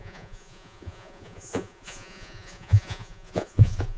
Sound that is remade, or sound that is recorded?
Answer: remade